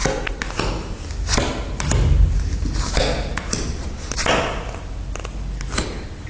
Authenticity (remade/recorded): recorded